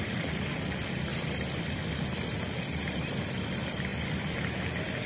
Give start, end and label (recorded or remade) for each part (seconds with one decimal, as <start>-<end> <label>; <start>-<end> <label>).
0.0-5.1 recorded